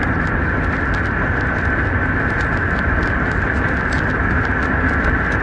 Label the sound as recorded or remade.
recorded